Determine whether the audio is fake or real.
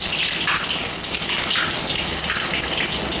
real